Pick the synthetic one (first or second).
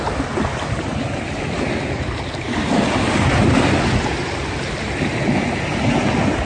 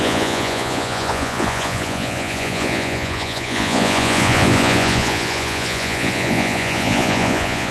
second